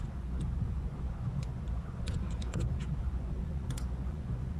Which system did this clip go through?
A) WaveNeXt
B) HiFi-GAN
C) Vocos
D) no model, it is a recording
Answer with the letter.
C